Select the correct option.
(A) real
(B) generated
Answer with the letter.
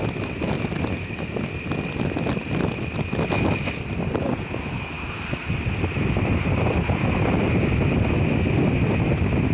A